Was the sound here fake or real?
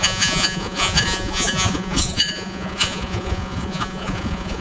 fake